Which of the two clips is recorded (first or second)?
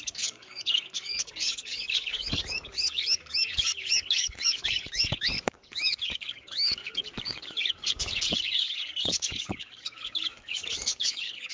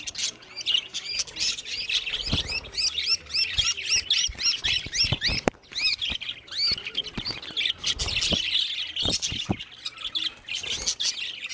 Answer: second